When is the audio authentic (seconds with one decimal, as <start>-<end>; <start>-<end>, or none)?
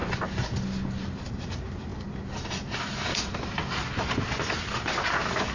0.0-5.5